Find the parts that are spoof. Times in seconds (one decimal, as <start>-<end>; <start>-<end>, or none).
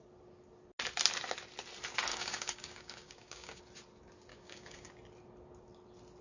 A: 2.1-3.6; 4.3-4.9